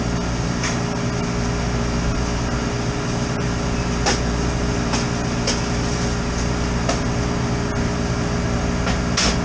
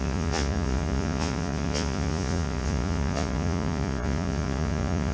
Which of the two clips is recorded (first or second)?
first